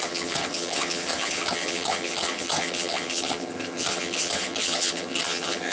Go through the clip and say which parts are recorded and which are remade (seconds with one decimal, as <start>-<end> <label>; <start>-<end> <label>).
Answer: 0.0-5.7 remade